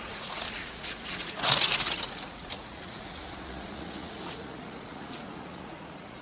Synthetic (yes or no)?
yes